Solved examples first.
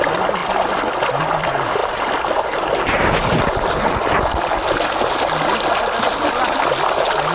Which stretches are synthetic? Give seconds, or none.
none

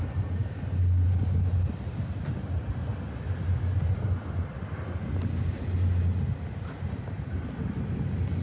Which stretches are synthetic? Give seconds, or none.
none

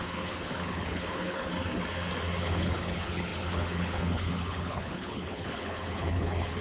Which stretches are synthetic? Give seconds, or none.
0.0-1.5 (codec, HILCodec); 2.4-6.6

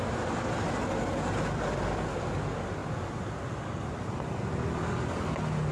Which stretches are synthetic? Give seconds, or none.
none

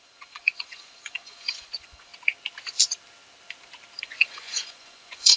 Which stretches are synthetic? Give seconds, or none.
0.0-2.1 (vocoder, Vocos); 4.0-5.4